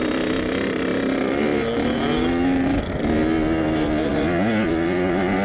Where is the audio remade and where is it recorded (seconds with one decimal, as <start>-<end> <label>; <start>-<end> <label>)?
0.0-5.4 recorded